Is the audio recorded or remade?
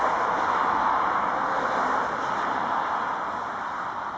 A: recorded